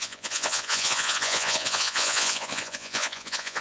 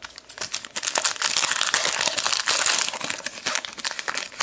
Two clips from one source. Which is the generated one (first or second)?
first